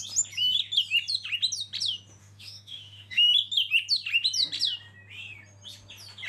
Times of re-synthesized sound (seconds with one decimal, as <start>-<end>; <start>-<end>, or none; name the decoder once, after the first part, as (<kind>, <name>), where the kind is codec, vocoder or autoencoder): 2.2-3.3 (autoencoder, DAC-VAE)